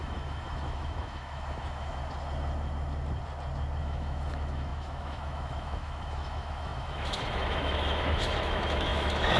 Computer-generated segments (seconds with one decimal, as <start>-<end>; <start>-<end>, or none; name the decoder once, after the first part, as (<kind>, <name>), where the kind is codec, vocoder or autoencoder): 0.0-2.0 (autoencoder, DAC-VAE); 3.8-9.4

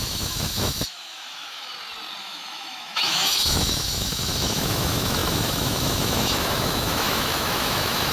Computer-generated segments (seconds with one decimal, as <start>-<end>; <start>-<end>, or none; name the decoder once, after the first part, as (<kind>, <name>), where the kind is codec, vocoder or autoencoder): 0.0-1.7 (autoencoder, DAC-VAE); 2.2-8.1